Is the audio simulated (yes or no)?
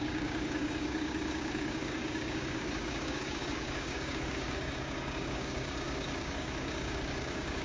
yes